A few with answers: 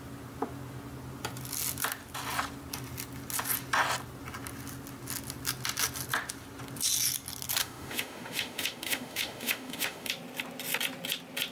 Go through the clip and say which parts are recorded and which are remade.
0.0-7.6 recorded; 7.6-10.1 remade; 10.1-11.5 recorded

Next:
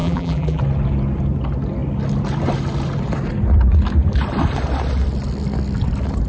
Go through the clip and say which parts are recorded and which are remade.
0.0-0.6 remade; 0.6-6.3 recorded

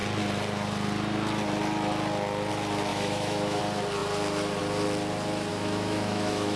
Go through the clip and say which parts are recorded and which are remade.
0.0-2.9 recorded; 2.9-3.6 remade; 3.6-5.5 recorded; 5.5-6.6 remade

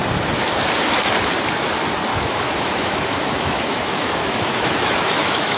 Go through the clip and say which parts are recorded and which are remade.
0.0-2.1 recorded; 2.1-5.6 remade

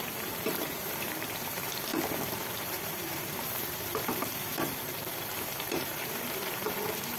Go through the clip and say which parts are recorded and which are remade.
0.0-1.9 remade; 1.9-2.6 recorded; 2.6-7.2 remade